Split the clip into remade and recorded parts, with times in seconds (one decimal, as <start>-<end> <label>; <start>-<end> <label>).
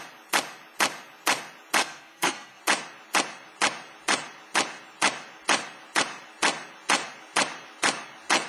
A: 0.0-1.8 recorded; 1.8-2.6 remade; 2.6-8.5 recorded